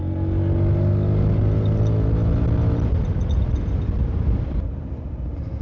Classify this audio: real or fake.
real